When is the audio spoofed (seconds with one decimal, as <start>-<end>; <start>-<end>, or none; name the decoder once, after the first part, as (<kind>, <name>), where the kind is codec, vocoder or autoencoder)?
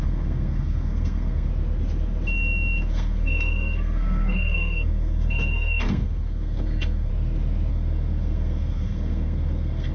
0.0-1.5 (codec, SNAC); 2.9-7.1; 7.7-9.9